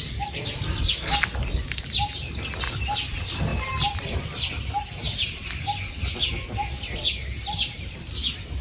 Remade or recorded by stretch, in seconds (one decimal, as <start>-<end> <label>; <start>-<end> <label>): 0.0-3.5 recorded; 3.5-5.8 remade; 5.8-8.6 recorded